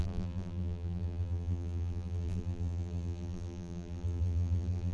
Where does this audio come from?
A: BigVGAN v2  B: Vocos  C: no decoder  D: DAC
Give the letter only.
A